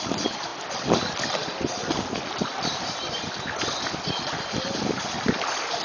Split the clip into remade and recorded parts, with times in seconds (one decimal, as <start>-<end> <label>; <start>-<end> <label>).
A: 0.0-5.8 recorded